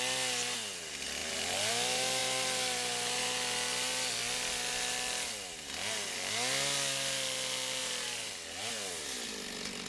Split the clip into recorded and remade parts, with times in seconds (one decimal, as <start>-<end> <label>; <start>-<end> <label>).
0.0-9.9 recorded